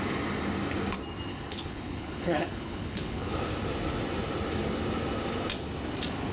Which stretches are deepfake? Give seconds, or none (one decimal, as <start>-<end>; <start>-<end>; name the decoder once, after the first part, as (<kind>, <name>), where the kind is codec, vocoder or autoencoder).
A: 1.3-3.4 (codec, HILCodec)